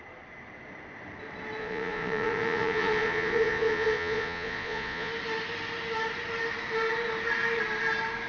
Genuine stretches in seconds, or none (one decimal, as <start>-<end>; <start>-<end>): 0.0-1.6; 5.1-8.3